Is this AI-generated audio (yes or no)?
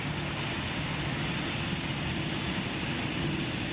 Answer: no